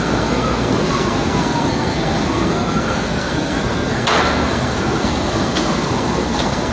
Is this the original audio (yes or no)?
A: no